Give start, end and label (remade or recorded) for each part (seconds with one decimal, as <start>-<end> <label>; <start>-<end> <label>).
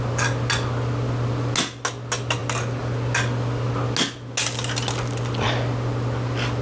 0.0-6.6 recorded